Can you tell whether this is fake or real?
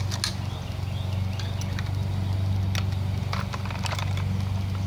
real